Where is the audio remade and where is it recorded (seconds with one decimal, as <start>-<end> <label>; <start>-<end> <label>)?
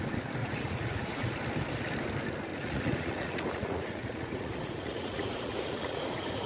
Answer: 0.0-0.4 recorded; 0.4-1.3 remade; 1.3-2.5 recorded; 2.5-6.5 remade